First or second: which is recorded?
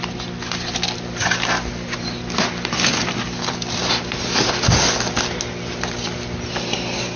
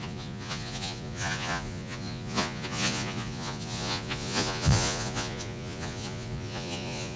first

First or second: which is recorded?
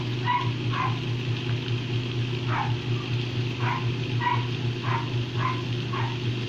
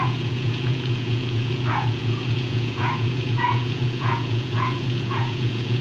first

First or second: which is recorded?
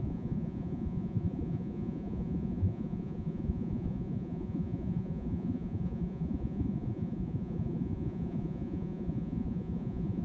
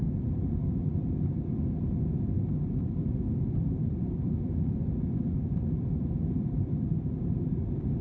second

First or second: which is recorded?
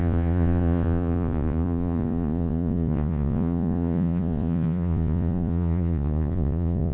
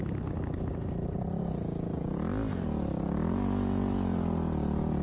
second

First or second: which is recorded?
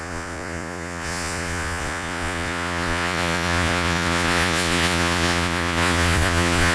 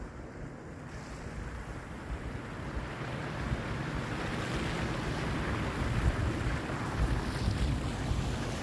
second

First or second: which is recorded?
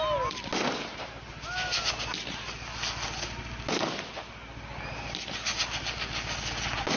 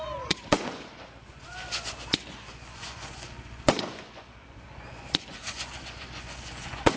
first